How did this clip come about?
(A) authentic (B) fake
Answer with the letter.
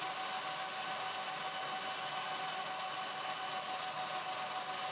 A